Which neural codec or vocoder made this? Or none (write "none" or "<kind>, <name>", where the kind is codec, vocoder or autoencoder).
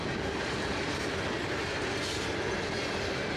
none